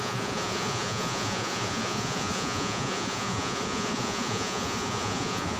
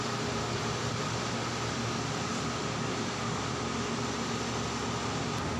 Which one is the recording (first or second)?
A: second